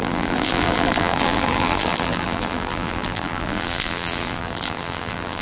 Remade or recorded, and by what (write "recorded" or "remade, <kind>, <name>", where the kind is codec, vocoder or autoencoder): remade, vocoder, BigVGAN v2